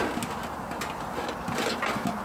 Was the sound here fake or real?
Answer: real